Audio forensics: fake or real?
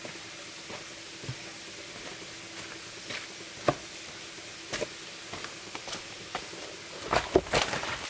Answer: real